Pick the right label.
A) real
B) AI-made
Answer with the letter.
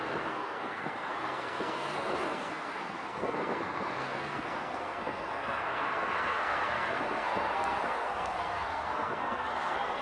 B